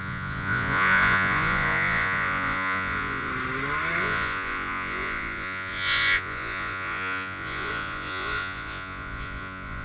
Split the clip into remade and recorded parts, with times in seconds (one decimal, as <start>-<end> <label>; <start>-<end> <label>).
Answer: 0.0-3.3 remade; 3.3-4.0 recorded; 4.0-9.8 remade